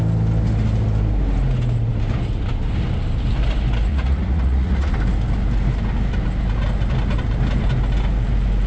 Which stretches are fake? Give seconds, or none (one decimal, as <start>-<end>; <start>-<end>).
3.9-4.9